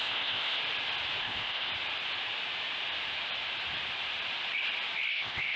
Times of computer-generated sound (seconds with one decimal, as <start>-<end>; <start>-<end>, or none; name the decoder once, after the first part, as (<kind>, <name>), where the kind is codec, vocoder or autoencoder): 0.0-0.6 (codec, ZipCodec); 1.2-1.7; 5.1-5.6